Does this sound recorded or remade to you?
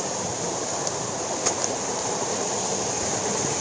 recorded